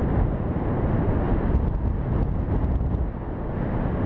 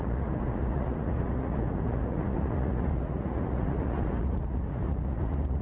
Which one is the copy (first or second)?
second